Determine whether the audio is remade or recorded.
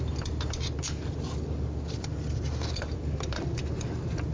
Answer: remade